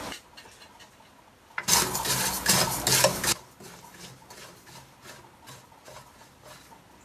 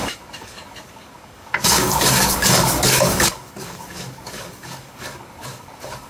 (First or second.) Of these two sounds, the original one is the first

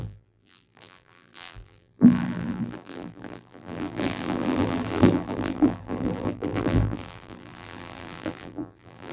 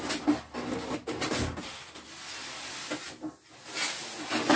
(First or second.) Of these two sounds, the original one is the second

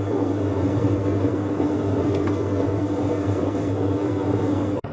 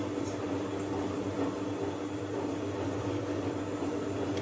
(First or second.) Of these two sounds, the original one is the second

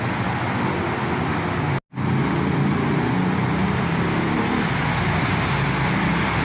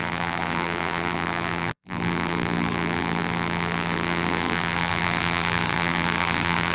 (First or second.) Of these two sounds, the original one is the first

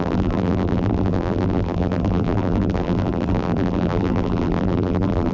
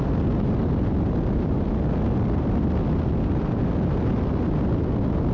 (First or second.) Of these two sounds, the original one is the second